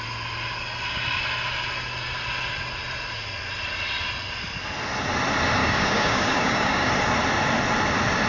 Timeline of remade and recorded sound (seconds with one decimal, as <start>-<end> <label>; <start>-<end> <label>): 0.0-5.6 recorded; 5.6-6.9 remade; 6.9-8.3 recorded